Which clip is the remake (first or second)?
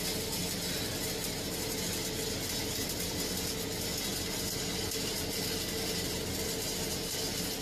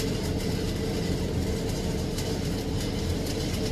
second